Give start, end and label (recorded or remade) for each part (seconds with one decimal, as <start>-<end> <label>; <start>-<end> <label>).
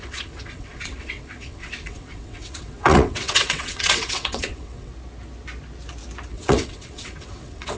0.0-4.9 remade; 4.9-6.3 recorded; 6.3-7.8 remade